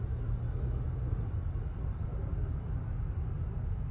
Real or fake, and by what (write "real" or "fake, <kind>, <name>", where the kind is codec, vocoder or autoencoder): real